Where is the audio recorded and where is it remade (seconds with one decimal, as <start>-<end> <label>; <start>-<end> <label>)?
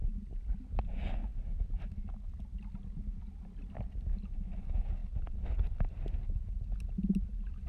0.0-7.7 recorded